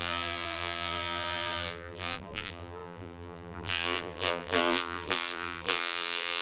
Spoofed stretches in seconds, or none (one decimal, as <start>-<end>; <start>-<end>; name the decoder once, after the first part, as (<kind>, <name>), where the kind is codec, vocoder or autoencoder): 0.0-6.4 (vocoder, BigVGAN v2)